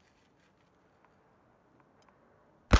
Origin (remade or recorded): recorded